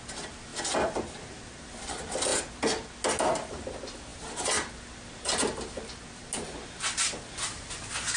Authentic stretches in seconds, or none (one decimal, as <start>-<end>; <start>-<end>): 0.0-8.2